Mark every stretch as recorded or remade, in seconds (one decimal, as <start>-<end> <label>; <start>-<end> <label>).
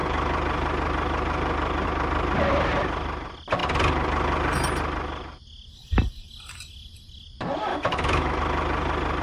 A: 0.0-7.7 recorded; 7.7-8.4 remade; 8.4-9.2 recorded